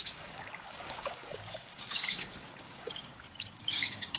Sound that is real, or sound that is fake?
fake